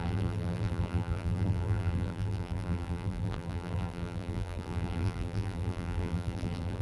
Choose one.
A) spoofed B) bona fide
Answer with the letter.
A